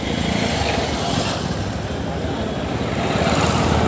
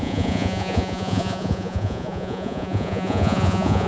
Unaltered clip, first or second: first